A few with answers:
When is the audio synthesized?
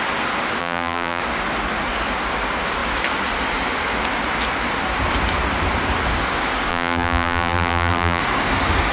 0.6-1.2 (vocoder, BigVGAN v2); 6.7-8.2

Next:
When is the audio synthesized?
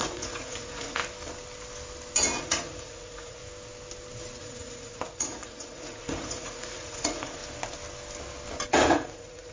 0.0-1.0 (vocoder, Vocos); 2.4-3.4; 4.4-7.4; 8.8-9.5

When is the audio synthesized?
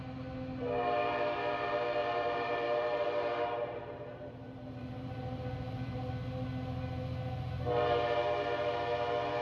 2.0-6.1 (vocoder, BigVGAN v2)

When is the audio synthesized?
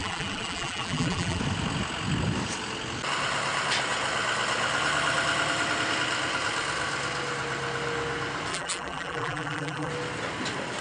0.0-1.4 (vocoder, BigVGAN v2); 8.5-9.9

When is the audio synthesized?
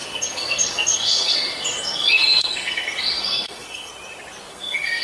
0.0-3.9 (codec, SNAC); 4.5-5.0